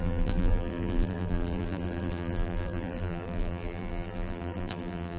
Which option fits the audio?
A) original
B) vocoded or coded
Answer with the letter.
B